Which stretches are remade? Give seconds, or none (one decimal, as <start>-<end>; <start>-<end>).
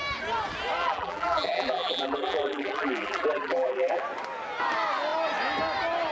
0.8-4.0